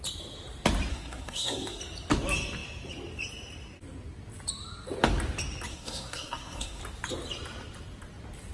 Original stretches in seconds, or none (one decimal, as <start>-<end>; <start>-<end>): 0.0-0.9; 1.8-5.7; 6.8-8.5